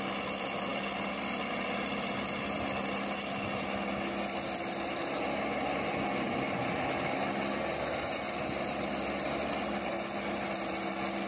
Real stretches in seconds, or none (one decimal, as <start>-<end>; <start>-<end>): 0.0-11.3